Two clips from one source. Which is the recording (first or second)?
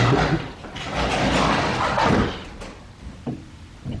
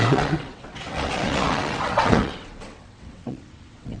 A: first